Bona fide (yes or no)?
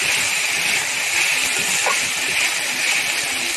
yes